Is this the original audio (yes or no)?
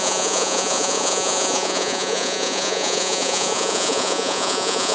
no